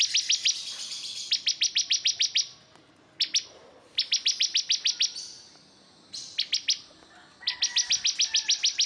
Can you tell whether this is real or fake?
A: real